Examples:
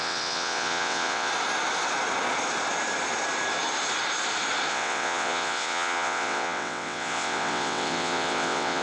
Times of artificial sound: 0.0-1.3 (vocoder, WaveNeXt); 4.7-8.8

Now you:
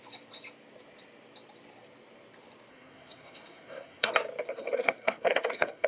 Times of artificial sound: 2.7-4.1 (codec, SNAC); 4.5-5.9

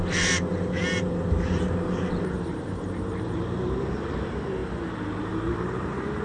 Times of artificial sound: 0.0-4.6 (vocoder, BigVGAN v2); 5.2-6.2

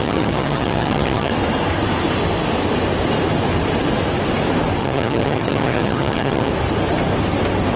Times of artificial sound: 0.0-1.3 (vocoder, HiFi-GAN); 4.8-6.5

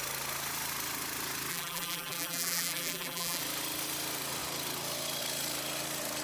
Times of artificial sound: 1.5-3.4 (vocoder, BigVGAN v2)

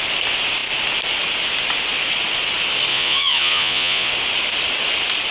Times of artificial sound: 2.9-4.1 (vocoder, Vocos)